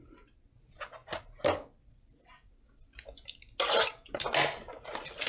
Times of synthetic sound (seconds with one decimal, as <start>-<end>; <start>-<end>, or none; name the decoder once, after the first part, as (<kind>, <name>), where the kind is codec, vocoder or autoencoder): none

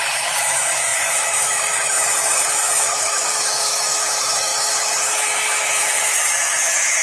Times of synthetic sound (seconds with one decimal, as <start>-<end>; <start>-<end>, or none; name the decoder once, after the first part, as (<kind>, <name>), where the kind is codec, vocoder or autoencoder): 0.0-7.0 (autoencoder, DAC-VAE)